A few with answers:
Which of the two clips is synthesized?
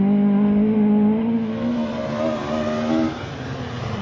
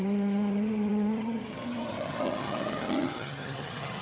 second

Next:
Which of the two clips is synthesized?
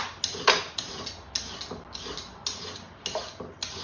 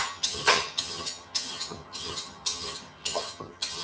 second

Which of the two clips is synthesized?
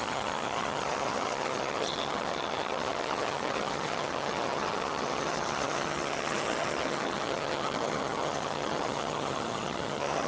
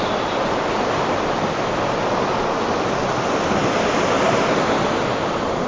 first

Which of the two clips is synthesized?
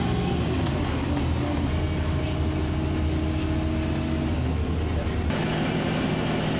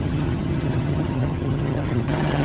second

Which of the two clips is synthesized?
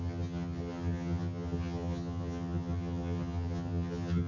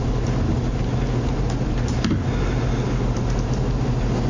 first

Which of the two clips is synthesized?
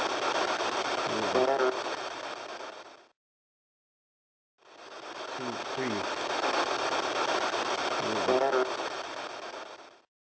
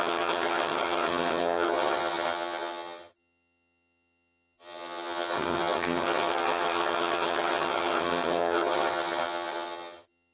second